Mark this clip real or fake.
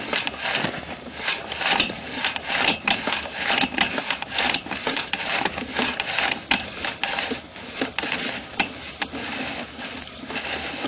real